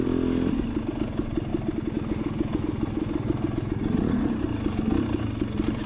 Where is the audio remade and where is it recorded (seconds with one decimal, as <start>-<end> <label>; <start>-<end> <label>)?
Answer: 0.0-5.9 recorded